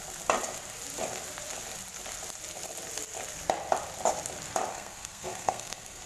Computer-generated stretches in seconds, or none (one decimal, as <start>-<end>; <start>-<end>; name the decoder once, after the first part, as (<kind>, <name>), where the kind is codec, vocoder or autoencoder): 4.7-6.1 (codec, SNAC)